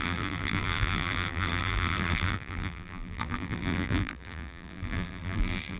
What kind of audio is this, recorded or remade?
remade